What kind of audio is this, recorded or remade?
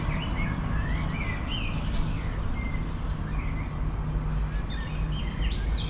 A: recorded